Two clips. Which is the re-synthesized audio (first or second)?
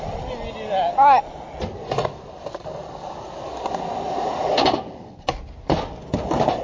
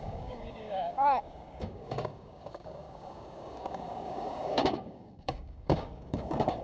second